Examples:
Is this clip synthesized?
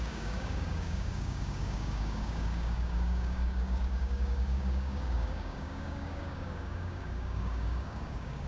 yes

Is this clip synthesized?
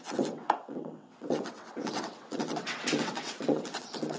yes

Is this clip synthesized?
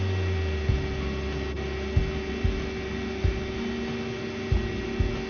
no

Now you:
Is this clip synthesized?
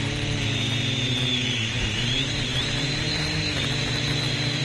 yes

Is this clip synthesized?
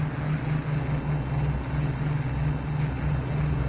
no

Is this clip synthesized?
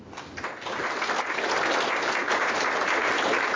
no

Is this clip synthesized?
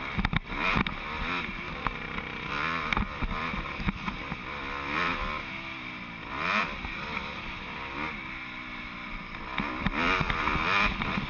no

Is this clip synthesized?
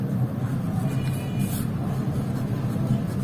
yes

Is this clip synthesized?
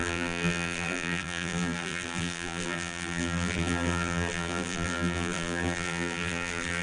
yes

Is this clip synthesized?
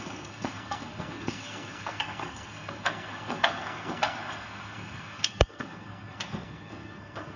yes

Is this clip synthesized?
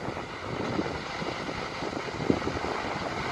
no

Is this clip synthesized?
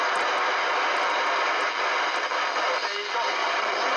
no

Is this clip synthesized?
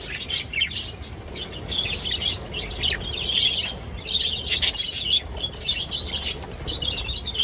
no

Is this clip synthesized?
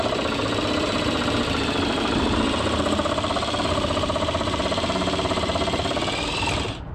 no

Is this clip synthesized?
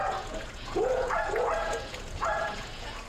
yes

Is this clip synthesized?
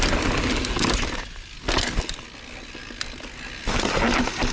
no